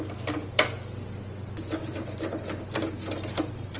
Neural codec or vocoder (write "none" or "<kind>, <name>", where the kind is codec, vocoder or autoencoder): none